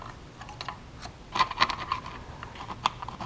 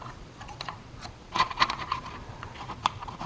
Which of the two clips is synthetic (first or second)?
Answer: second